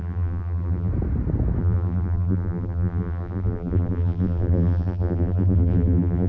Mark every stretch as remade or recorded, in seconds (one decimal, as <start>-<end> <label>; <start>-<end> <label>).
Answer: 0.0-0.9 remade; 0.9-1.6 recorded; 1.6-6.3 remade

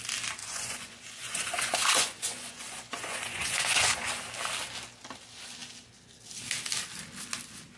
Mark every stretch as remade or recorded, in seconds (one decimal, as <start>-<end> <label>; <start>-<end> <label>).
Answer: 0.0-0.4 recorded; 0.4-4.2 remade; 4.2-7.8 recorded

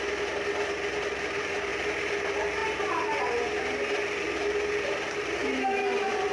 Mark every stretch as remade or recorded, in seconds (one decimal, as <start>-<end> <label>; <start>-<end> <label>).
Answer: 0.0-6.3 recorded

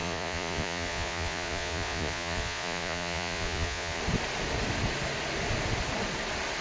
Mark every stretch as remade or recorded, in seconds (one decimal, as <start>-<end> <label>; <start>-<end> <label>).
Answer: 0.0-4.0 remade; 4.0-6.6 recorded

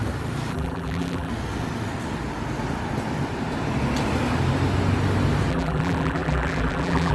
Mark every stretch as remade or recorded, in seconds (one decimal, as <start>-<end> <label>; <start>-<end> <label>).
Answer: 0.0-0.5 recorded; 0.5-1.3 remade; 1.3-5.5 recorded; 5.5-7.1 remade